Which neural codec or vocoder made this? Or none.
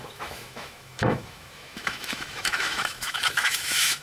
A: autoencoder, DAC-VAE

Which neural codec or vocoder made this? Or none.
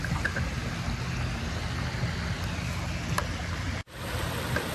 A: none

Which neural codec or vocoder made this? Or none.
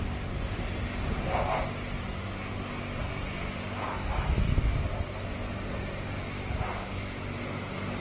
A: none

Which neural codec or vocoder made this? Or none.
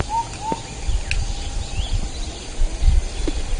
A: none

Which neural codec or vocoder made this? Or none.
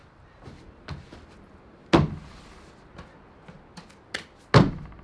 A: none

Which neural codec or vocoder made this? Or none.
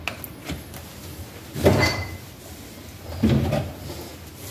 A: none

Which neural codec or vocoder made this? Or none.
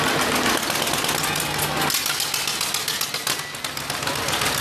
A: none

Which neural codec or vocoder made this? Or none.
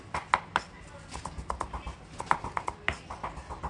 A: none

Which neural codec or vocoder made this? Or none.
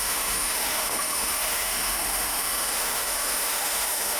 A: autoencoder, DAC-VAE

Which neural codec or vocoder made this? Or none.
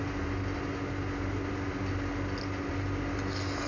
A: none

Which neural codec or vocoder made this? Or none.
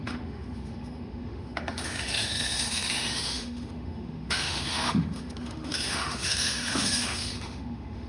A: autoencoder, DAC-VAE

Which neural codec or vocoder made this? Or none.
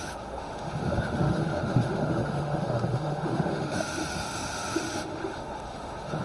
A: autoencoder, DAC-VAE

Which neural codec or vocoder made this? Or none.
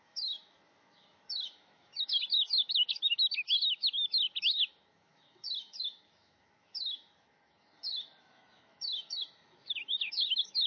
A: autoencoder, DAC-VAE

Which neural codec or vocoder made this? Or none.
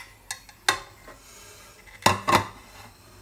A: none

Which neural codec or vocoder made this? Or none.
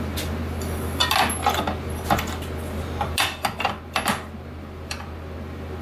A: none